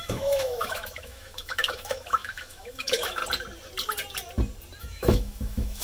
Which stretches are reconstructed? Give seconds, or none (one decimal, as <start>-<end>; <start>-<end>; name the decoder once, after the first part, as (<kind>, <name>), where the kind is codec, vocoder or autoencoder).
0.0-3.2 (autoencoder, DAC-VAE); 4.8-5.8